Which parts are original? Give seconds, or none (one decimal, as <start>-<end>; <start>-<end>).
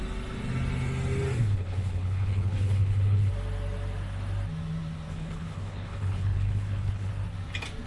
0.0-1.4; 3.3-5.1; 7.1-7.9